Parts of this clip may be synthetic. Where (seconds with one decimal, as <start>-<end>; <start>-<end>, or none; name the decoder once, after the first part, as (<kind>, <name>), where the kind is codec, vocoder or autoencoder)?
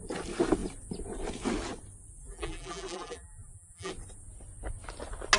2.2-3.9 (vocoder, BigVGAN v2)